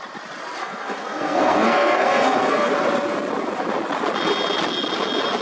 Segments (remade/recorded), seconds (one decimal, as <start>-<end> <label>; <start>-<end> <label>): 0.0-0.6 recorded; 0.6-2.7 remade; 2.7-5.4 recorded